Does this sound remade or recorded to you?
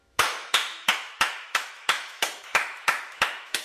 remade